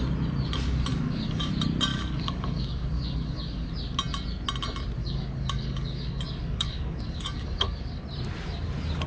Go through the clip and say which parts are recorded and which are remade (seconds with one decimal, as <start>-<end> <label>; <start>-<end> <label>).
0.0-0.9 recorded; 0.9-1.5 remade; 1.5-1.9 recorded; 1.9-3.7 remade; 3.7-5.0 recorded; 5.0-8.0 remade; 8.0-9.1 recorded